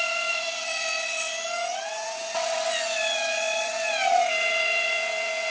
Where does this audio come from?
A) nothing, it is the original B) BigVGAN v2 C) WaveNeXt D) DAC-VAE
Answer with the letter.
C